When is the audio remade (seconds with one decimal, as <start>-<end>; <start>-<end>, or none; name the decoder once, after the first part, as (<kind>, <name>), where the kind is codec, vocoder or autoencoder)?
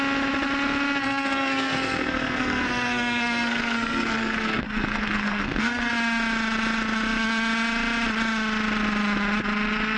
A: 1.0-5.9 (codec, SNAC)